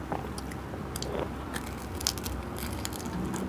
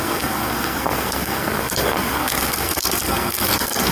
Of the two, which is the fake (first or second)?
second